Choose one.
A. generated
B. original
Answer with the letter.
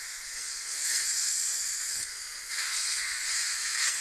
A